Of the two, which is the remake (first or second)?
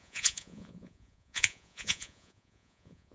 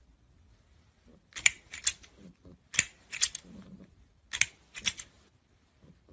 first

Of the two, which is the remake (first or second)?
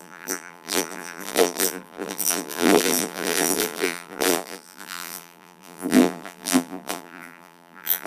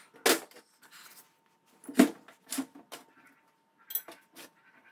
first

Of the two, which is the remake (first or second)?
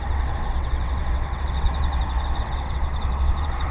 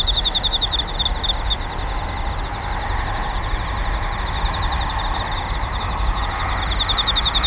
first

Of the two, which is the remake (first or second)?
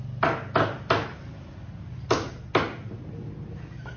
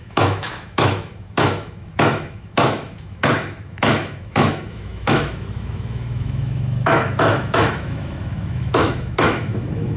second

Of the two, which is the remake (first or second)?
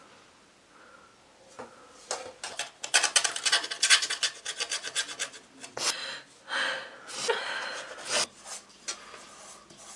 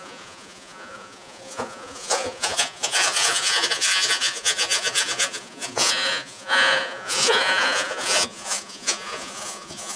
second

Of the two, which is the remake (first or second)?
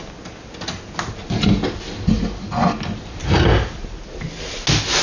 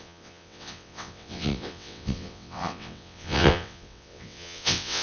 second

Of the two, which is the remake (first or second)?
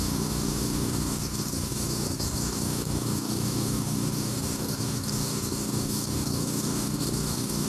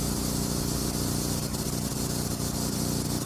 first